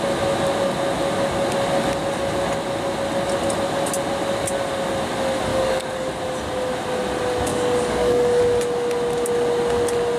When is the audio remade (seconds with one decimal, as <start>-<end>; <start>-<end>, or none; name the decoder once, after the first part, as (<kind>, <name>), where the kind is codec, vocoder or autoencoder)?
5.5-6.1 (codec, DAC); 7.5-8.4